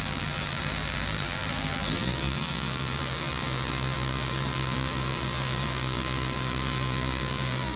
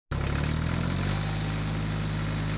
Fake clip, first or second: first